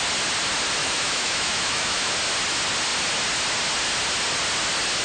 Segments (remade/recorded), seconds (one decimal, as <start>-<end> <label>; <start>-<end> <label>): 0.0-0.8 recorded; 0.8-2.1 remade; 2.1-5.0 recorded